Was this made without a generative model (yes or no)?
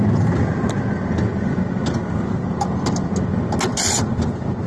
yes